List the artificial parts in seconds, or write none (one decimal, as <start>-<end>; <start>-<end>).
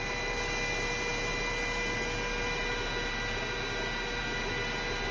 none